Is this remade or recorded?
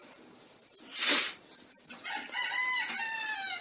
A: recorded